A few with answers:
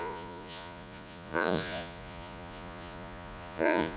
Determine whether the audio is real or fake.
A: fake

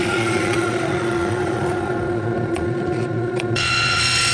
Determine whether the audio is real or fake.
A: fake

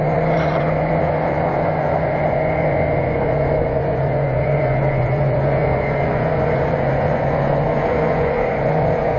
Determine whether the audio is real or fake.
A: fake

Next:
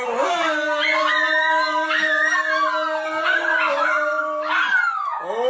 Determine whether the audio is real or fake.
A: real